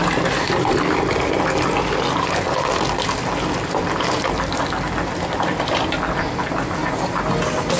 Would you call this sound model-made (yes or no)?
no